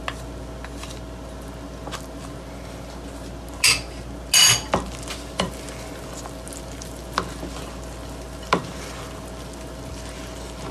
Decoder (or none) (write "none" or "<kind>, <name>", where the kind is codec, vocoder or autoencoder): none